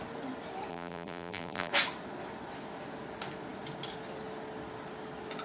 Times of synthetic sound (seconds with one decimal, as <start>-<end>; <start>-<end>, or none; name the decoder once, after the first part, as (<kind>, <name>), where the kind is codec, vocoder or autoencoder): 0.7-1.7 (vocoder, BigVGAN v2)